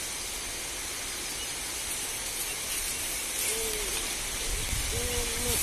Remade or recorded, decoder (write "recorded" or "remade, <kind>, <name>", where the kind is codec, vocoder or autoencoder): recorded